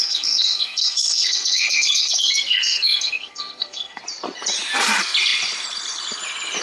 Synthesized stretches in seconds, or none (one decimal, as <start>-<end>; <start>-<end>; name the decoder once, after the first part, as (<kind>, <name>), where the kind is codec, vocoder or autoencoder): 0.0-4.0 (codec, SNAC)